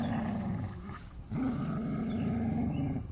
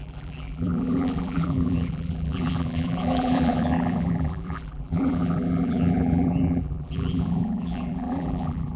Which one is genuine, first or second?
first